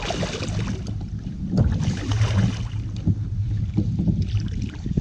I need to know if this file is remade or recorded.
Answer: recorded